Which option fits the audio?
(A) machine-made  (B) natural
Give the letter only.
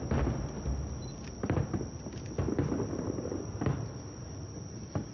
B